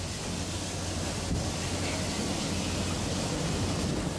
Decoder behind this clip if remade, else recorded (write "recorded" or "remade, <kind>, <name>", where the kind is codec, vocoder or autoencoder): recorded